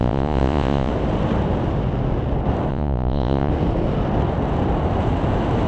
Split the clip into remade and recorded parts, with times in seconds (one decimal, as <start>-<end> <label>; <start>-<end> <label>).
0.0-0.9 remade; 0.9-2.7 recorded; 2.7-3.5 remade; 3.5-5.7 recorded